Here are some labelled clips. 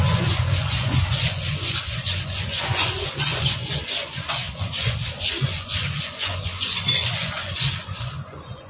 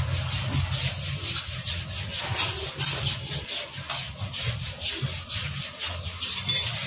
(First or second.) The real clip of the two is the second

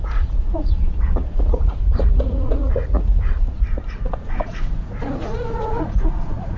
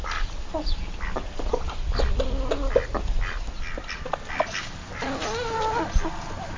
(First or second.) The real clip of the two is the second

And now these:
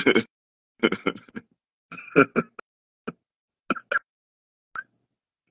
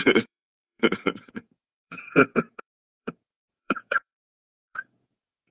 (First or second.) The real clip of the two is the first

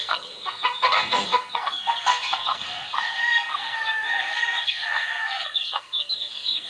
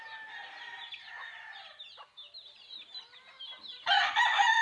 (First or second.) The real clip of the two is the second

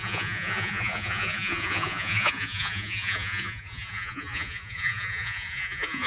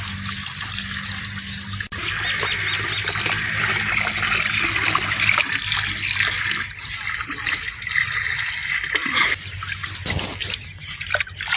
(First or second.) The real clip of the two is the second